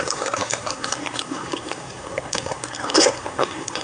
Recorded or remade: remade